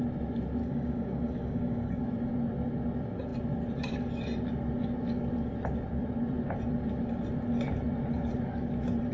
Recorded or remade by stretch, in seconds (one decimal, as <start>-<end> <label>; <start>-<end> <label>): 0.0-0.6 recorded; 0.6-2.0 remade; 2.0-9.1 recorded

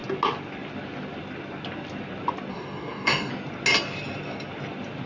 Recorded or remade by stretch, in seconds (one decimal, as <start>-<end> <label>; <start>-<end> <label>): 0.0-2.5 recorded; 2.5-3.3 remade; 3.3-5.1 recorded

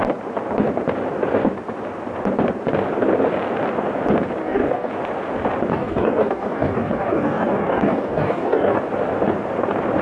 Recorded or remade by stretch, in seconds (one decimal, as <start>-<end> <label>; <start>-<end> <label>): 0.0-4.4 recorded; 4.4-4.9 remade; 4.9-5.7 recorded; 5.7-8.8 remade; 8.8-10.0 recorded